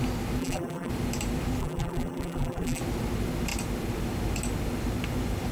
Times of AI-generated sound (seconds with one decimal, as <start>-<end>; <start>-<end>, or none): 0.4-0.9; 1.6-2.8